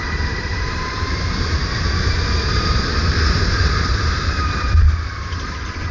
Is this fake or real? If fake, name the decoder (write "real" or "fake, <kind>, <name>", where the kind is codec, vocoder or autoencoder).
fake, vocoder, BigVGAN v2